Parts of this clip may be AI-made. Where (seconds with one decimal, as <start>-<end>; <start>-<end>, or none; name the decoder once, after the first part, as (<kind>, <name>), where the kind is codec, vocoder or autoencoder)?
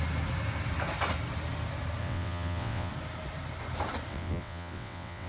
2.0-2.9 (vocoder, WaveNeXt); 4.1-5.3